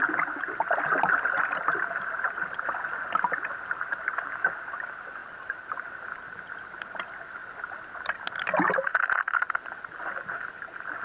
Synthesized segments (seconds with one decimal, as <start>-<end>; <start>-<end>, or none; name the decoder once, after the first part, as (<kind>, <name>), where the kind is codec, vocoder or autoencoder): 5.2-5.7 (vocoder, BigVGAN v2)